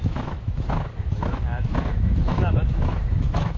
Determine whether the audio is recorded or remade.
remade